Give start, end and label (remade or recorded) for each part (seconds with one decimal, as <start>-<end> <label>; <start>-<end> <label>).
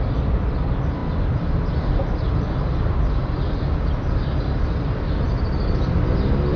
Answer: 0.0-6.6 recorded